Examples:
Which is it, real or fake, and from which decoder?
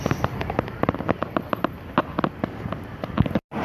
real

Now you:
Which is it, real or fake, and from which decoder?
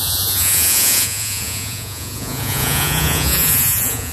fake, vocoder, Vocos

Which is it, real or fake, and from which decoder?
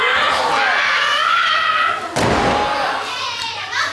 real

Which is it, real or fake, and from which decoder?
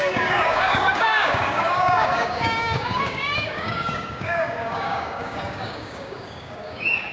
fake, codec, DAC